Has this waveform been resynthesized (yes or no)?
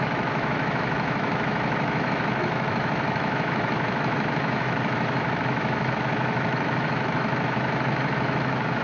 yes